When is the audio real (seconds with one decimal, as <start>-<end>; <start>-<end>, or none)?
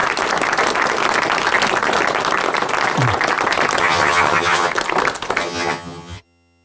0.0-3.8; 4.7-5.4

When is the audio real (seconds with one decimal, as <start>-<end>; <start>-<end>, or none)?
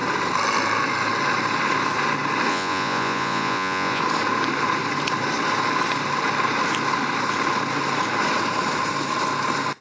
0.0-2.5; 4.0-9.8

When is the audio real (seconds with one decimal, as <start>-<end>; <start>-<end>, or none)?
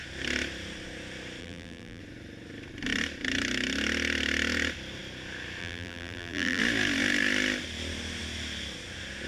0.0-1.4; 2.0-5.6; 6.6-9.3